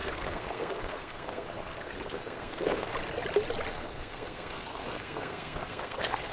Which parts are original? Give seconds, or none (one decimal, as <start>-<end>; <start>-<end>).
2.9-3.7